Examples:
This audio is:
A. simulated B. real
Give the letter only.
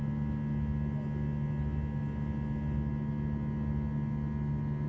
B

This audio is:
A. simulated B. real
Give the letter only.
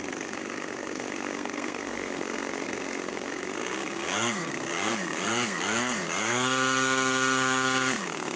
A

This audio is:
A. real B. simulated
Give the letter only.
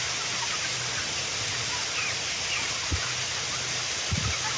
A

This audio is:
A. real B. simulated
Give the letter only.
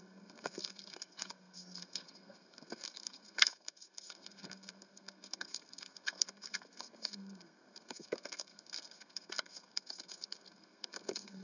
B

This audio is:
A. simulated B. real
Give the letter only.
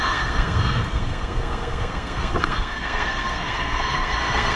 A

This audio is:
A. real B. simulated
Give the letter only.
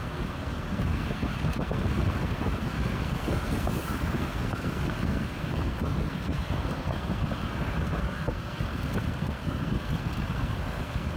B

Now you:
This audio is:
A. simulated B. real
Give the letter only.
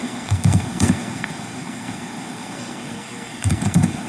A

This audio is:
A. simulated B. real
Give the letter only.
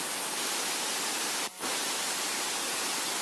B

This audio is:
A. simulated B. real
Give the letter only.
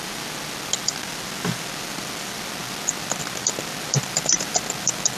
B